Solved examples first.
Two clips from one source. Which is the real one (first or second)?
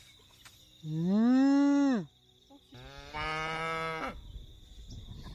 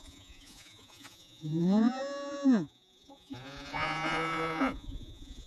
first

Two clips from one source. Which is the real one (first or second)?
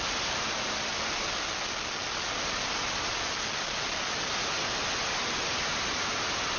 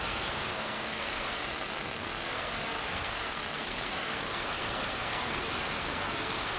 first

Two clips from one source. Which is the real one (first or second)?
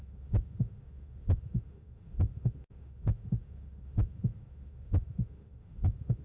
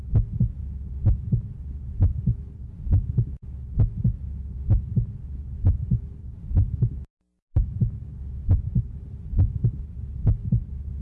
second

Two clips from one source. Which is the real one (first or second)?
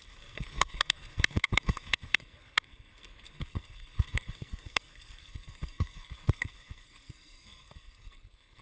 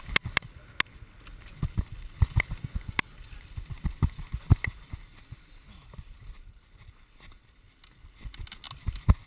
second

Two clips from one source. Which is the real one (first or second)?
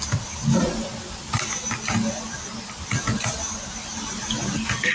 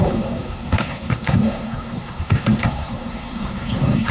first